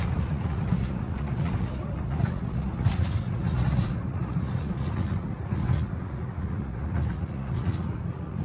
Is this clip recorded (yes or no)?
no